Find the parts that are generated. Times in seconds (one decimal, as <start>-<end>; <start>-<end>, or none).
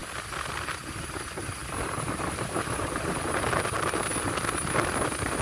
none